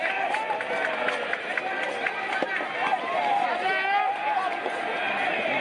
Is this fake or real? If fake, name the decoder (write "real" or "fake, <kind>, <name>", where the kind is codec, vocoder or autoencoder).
real